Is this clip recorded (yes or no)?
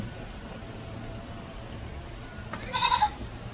yes